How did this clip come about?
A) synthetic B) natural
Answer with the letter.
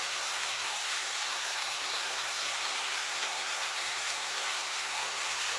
A